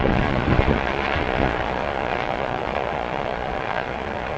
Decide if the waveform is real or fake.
fake